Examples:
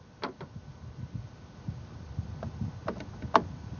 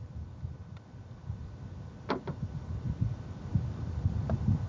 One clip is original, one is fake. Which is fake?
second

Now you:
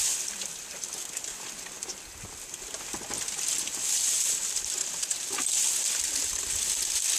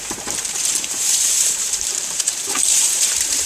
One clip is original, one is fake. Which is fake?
second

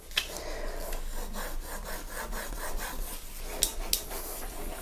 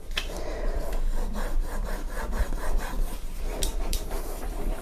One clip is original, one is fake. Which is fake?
second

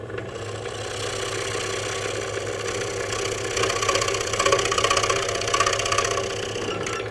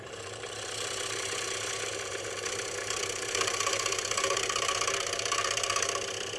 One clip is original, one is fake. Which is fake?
second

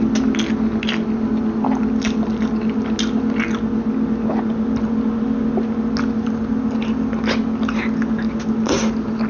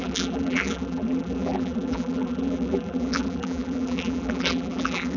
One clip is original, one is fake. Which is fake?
second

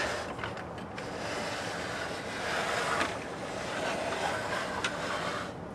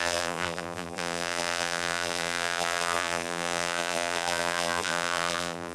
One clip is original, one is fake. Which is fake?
second